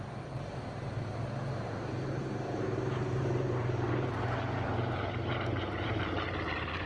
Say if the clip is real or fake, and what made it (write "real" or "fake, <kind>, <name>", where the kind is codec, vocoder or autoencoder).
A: fake, vocoder, BigVGAN v2